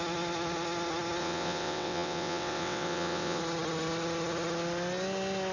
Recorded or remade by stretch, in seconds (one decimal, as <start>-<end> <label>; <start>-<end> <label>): 0.0-1.2 recorded; 1.2-3.4 remade; 3.4-5.5 recorded